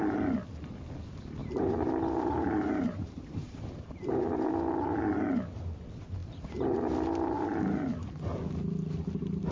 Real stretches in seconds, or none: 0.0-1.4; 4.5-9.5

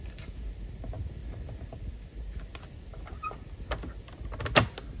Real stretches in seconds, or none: 0.0-5.0

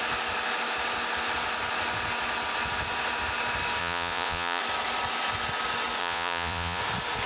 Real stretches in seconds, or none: 0.0-3.8; 4.6-6.0; 6.8-7.3

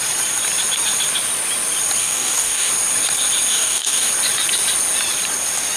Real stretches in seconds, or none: 0.0-2.0; 2.7-3.5; 4.1-5.8